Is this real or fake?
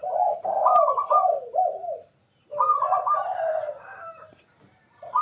fake